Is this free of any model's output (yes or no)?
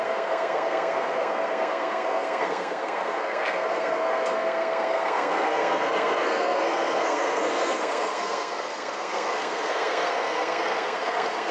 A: no